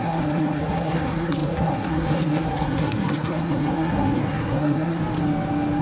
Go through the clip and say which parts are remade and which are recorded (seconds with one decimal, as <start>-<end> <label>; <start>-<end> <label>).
0.0-5.0 remade; 5.0-5.8 recorded